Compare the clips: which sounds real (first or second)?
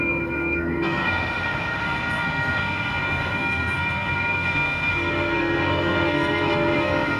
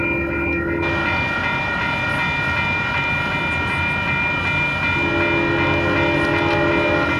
second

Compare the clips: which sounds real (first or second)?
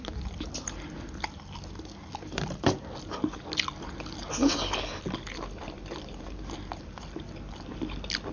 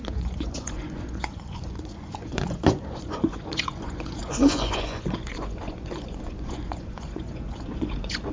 first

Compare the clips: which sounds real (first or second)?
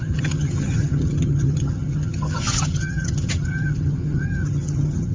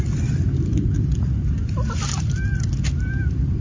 second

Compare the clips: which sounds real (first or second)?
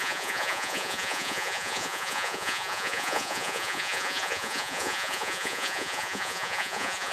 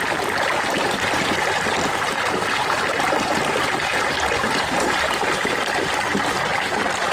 second